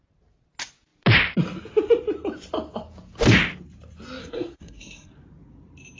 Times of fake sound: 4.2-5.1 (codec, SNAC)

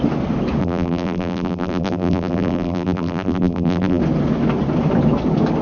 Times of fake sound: 0.6-4.0 (vocoder, BigVGAN v2)

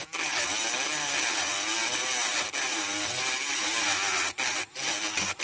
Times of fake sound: none